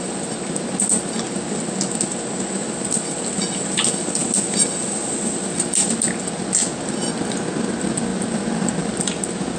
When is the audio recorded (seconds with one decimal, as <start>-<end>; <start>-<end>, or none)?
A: 0.0-8.1; 9.2-9.6